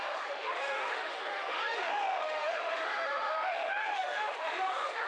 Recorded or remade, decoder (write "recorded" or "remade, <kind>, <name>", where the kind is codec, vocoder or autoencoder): remade, autoencoder, DAC-VAE